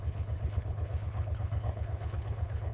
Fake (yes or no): yes